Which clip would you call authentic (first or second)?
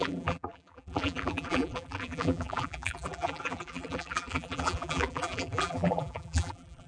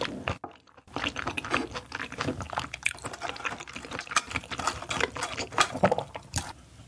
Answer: second